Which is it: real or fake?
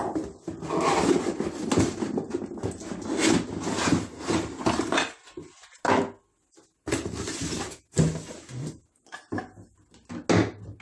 real